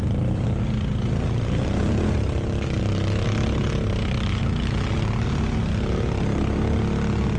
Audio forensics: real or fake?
real